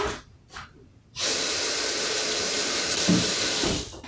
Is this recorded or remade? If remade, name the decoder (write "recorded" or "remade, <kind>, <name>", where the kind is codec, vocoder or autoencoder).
remade, vocoder, BigVGAN v2